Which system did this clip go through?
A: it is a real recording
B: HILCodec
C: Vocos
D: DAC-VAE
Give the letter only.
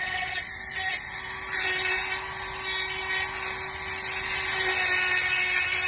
A